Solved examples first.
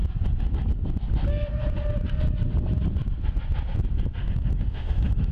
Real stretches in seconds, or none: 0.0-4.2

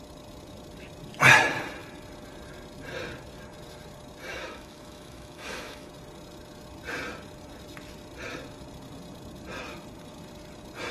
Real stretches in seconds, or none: 0.0-4.3; 5.9-10.9

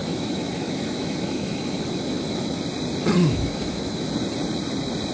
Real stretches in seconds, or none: 2.6-3.2; 4.1-5.1

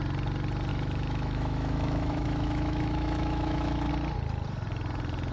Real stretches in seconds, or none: 0.0-0.7; 3.9-5.3

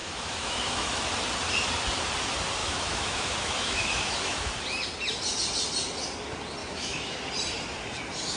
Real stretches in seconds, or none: 1.0-2.6; 4.5-6.6; 7.2-8.4

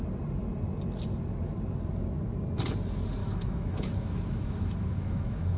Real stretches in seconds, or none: 0.0-3.2

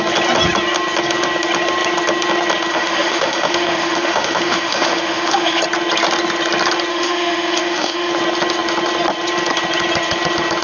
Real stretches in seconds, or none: 0.0-2.7; 5.6-6.9; 8.1-10.6

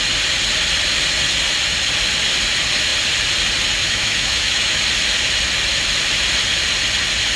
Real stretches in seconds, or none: 0.0-3.8; 4.8-7.4